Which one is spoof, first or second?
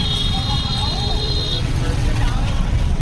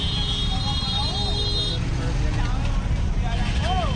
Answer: first